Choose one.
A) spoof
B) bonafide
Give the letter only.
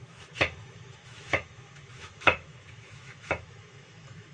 A